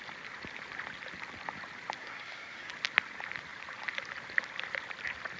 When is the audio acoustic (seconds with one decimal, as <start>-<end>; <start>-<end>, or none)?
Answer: 0.0-2.0; 2.7-5.4